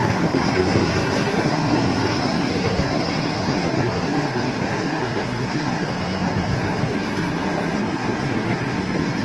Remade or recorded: remade